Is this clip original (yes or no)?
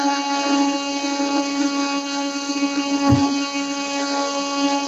no